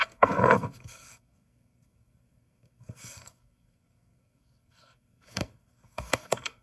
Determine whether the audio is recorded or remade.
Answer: remade